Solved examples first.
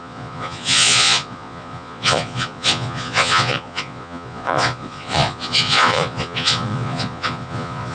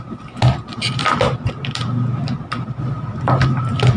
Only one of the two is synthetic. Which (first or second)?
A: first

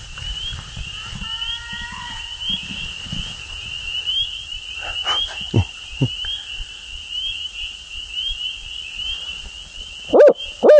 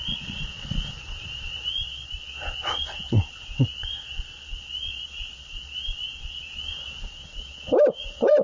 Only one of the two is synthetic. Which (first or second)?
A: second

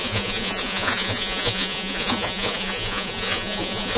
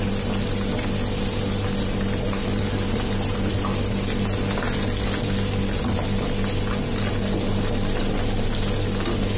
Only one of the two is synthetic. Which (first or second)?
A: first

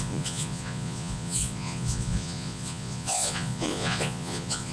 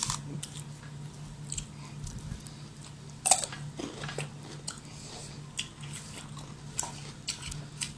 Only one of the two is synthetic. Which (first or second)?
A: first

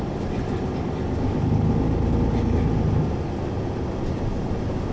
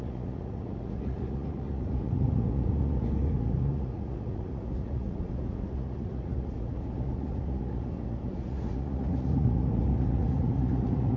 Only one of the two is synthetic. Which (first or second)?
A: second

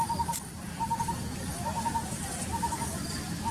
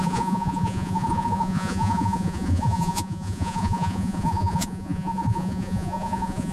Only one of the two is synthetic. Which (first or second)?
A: second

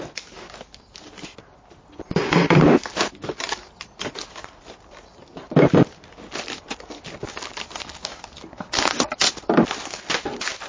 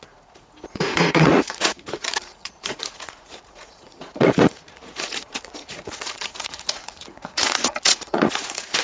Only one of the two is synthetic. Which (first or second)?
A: second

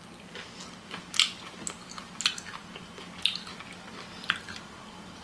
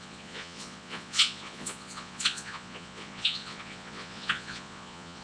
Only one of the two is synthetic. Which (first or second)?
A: second